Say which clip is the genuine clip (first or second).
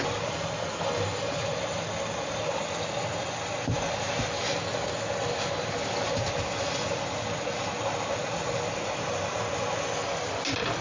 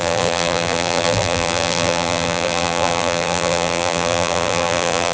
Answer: first